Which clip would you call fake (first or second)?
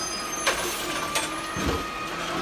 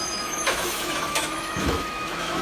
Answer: second